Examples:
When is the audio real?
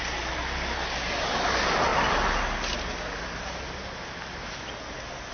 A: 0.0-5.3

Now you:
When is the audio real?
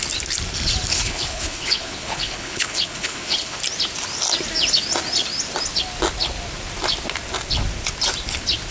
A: 0.0-0.9; 3.6-8.7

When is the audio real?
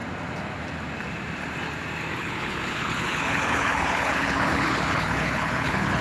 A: 0.0-2.2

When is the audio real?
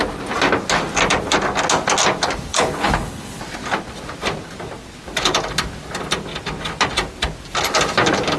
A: 0.0-2.5; 3.4-8.4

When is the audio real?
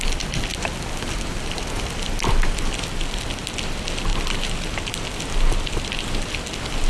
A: 0.0-6.9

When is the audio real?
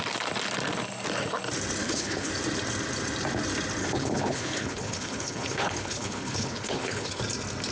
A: 0.0-1.8; 2.3-3.8; 7.2-7.7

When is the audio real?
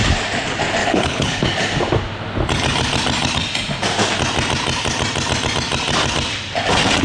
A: 0.0-0.8; 1.4-7.0